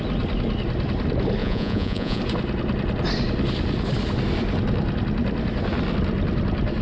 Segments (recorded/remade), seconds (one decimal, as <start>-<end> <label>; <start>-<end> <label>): 0.0-1.4 recorded; 1.4-2.2 remade; 2.2-6.8 recorded